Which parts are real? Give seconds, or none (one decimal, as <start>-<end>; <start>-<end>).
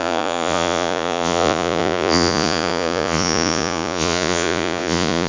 none